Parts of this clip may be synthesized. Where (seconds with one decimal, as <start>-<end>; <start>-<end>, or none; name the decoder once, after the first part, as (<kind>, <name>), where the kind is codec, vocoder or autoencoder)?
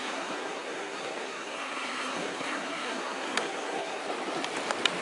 0.0-4.0 (codec, SNAC)